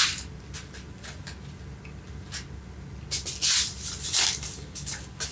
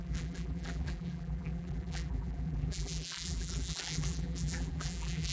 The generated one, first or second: second